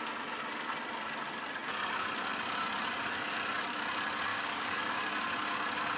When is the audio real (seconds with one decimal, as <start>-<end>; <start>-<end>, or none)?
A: 0.0-4.3; 5.0-6.0